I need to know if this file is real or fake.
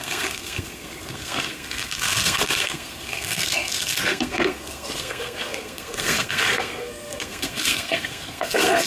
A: fake